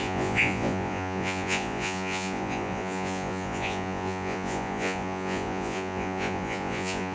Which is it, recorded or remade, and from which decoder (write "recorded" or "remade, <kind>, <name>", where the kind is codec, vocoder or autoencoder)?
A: remade, vocoder, Vocos